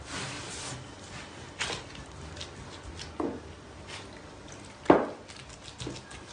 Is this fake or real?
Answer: real